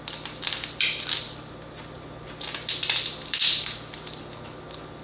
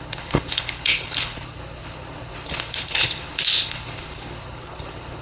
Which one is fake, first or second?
second